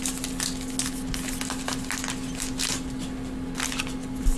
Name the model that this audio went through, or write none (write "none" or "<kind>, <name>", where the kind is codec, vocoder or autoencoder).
none